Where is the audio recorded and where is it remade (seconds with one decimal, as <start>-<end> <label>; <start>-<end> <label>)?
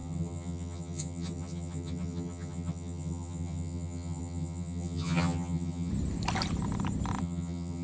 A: 0.0-5.9 remade; 5.9-7.2 recorded; 7.2-7.8 remade